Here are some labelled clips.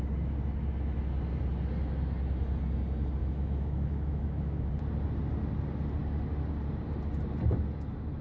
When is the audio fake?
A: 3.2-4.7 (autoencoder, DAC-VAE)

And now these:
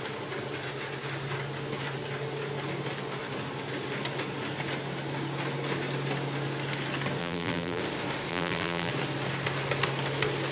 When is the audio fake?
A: 7.2-7.8 (vocoder, BigVGAN v2); 8.3-8.9

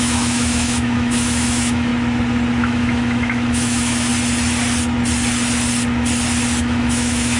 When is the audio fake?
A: 0.0-1.9 (autoencoder, DAC-VAE); 2.6-4.1; 6.6-7.4